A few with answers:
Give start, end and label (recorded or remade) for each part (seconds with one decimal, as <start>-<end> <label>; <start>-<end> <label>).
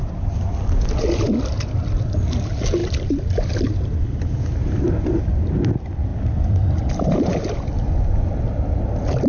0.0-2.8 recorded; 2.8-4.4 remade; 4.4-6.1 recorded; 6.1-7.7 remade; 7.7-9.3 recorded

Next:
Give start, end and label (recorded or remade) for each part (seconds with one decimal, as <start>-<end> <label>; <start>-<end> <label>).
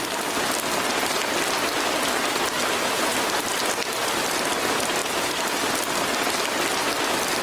0.0-5.0 recorded; 5.0-5.7 remade; 5.7-7.4 recorded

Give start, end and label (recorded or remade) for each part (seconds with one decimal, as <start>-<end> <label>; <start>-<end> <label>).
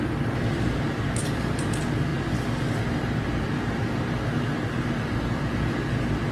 0.0-6.3 recorded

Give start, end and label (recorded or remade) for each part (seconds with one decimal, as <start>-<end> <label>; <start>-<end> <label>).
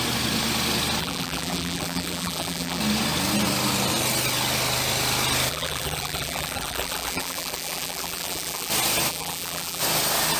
0.0-1.0 recorded; 1.0-2.8 remade; 2.8-5.5 recorded; 5.5-8.7 remade; 8.7-9.1 recorded; 9.1-9.8 remade; 9.8-10.4 recorded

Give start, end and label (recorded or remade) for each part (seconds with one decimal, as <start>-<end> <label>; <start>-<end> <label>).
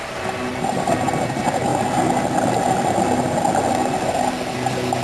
0.0-0.5 recorded; 0.5-1.1 remade; 1.1-5.0 recorded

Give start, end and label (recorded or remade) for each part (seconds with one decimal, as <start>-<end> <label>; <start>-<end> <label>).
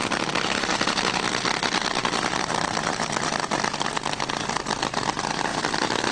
0.0-2.0 recorded; 2.0-3.7 remade; 3.7-5.5 recorded; 5.5-6.1 remade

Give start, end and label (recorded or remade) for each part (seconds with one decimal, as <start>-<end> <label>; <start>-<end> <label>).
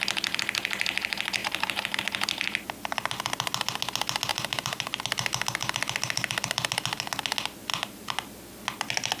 0.0-1.4 recorded; 1.4-2.0 remade; 2.0-4.3 recorded; 4.3-5.0 remade; 5.0-7.7 recorded; 7.7-8.3 remade; 8.3-9.2 recorded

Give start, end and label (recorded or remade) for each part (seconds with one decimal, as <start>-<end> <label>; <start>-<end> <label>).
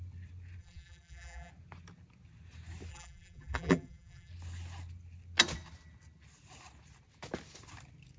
0.0-0.6 recorded; 0.6-1.5 remade; 1.5-2.9 recorded; 2.9-4.3 remade; 4.3-8.2 recorded